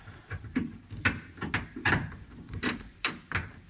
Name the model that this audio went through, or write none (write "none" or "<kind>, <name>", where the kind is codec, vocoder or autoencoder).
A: none